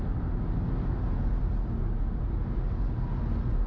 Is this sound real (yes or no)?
yes